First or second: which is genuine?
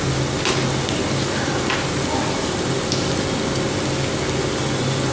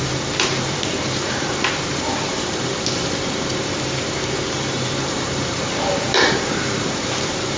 first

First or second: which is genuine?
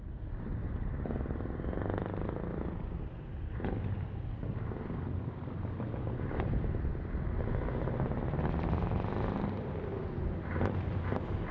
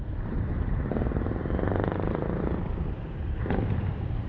first